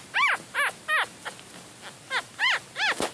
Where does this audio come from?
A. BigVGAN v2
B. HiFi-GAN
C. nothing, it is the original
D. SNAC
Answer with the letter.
C